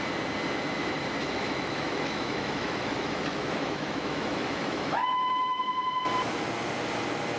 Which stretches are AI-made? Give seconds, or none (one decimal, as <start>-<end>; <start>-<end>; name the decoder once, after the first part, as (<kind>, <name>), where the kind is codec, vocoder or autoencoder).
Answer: 1.2-5.6 (autoencoder, DAC-VAE)